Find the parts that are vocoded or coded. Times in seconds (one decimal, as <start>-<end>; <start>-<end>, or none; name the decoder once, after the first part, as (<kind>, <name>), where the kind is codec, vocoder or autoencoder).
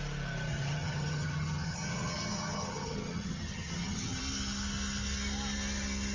0.5-4.2 (vocoder, HiFi-GAN)